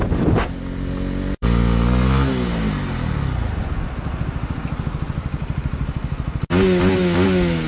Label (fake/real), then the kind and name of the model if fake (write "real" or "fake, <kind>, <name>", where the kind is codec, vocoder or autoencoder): real